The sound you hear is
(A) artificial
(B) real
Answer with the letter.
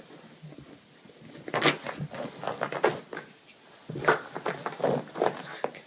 B